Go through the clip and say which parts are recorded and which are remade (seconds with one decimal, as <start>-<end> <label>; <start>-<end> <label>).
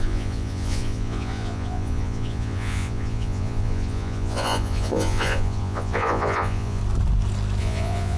0.0-6.8 remade; 6.8-7.6 recorded; 7.6-8.2 remade